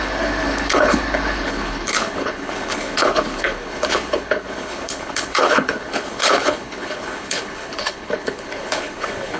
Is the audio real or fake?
fake